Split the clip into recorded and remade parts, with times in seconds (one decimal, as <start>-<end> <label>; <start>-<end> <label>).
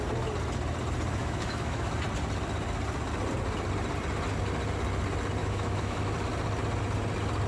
0.0-1.2 recorded; 1.2-1.9 remade; 1.9-5.4 recorded; 5.4-6.0 remade; 6.0-7.5 recorded